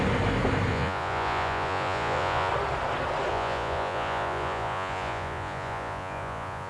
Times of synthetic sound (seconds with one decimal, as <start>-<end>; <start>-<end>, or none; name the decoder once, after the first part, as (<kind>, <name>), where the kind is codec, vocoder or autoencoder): 0.7-2.5 (vocoder, Vocos); 3.3-6.7